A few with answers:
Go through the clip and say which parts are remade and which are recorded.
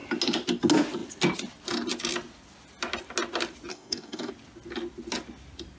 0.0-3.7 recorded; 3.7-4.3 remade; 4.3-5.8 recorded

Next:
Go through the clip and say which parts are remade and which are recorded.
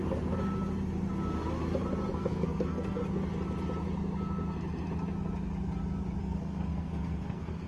0.0-2.1 recorded; 2.1-3.0 remade; 3.0-6.2 recorded; 6.2-7.7 remade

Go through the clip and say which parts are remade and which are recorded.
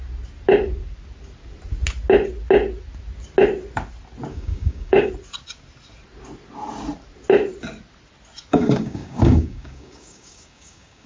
0.0-4.3 recorded; 4.3-5.1 remade; 5.1-8.5 recorded; 8.5-11.1 remade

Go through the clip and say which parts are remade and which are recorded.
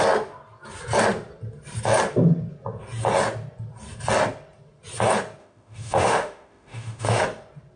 0.0-5.4 recorded; 5.4-7.2 remade; 7.2-7.8 recorded